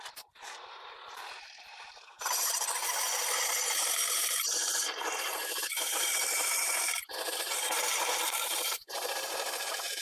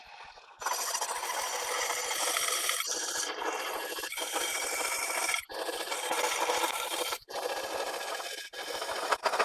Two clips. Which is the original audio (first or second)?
second